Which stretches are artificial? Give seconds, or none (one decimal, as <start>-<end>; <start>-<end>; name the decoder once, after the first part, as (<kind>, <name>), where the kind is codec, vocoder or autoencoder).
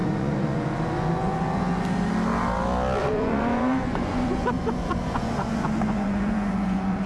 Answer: 0.0-1.8 (vocoder, Vocos); 3.0-7.1